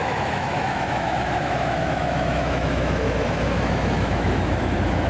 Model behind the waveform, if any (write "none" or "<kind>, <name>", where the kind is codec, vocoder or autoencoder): autoencoder, DAC-VAE